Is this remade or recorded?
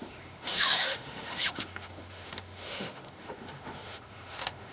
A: remade